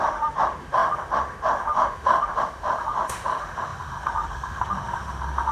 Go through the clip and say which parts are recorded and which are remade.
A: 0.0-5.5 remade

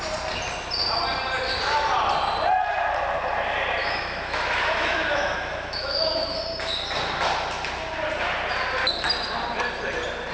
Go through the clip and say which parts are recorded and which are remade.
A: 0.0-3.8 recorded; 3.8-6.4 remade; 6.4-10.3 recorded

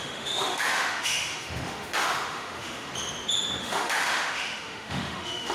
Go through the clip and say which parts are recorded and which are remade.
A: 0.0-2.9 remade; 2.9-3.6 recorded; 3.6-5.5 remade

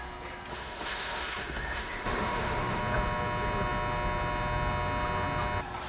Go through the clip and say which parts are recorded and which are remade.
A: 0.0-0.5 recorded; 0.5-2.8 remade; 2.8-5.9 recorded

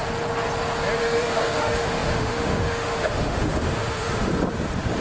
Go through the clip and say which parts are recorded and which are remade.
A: 0.0-1.0 recorded; 1.0-4.3 remade; 4.3-5.0 recorded

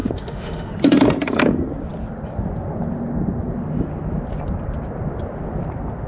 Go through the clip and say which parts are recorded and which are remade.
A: 0.0-0.7 remade; 0.7-6.1 recorded